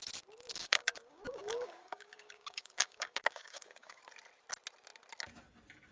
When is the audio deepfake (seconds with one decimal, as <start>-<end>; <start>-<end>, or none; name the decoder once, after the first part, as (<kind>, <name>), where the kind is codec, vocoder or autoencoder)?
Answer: 0.5-4.0 (codec, DAC)